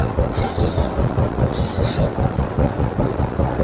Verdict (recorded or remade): remade